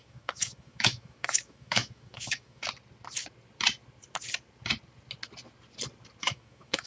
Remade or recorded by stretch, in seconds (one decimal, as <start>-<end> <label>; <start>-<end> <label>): 0.0-2.6 remade; 2.6-6.2 recorded; 6.2-6.9 remade